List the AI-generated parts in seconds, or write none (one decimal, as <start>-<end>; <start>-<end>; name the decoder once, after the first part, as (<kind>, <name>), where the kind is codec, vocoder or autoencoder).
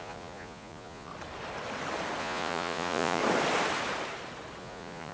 0.0-1.1 (vocoder, Vocos); 2.2-3.2; 4.6-5.1